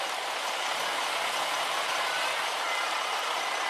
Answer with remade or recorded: recorded